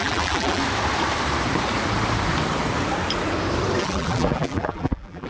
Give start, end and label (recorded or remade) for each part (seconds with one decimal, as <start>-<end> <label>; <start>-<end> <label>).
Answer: 0.0-0.6 remade; 0.6-3.8 recorded; 3.8-5.3 remade